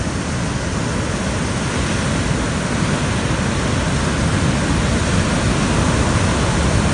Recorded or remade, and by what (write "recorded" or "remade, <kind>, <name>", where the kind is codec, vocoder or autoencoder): recorded